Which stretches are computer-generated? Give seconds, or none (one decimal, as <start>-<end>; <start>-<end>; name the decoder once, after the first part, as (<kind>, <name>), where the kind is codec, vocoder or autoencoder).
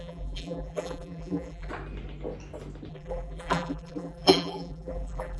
0.0-1.7 (vocoder, BigVGAN v2); 2.9-5.4